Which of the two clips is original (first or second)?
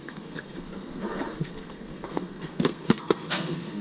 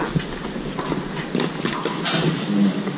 second